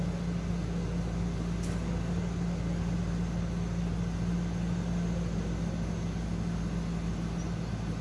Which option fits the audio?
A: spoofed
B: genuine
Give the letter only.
B